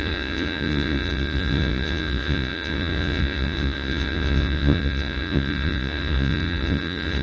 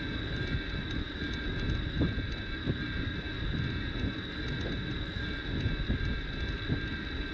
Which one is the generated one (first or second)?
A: first